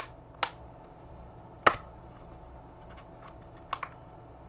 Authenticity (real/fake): real